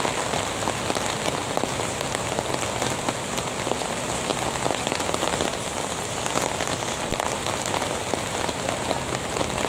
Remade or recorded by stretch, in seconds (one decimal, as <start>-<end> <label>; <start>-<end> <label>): 0.0-9.7 recorded